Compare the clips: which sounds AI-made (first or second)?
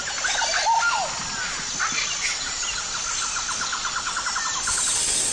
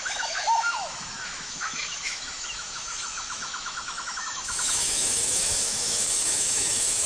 second